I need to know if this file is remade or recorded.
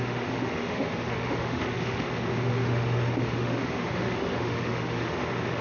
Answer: remade